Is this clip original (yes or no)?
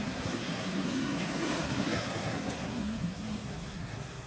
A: no